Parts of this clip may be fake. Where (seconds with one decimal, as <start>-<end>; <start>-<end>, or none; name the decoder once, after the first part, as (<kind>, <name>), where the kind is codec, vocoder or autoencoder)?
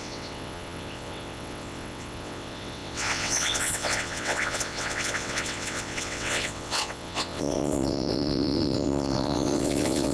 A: 0.0-10.1 (vocoder, WaveNeXt)